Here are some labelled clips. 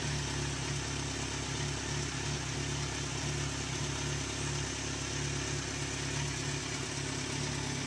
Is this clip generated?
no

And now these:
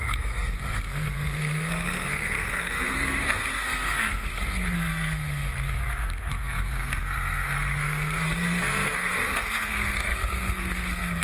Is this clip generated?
yes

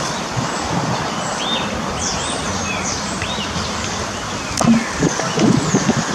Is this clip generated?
no